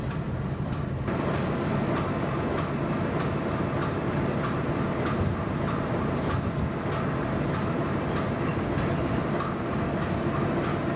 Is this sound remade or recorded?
recorded